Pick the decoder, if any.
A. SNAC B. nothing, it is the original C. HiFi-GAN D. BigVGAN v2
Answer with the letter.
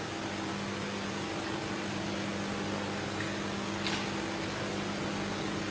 B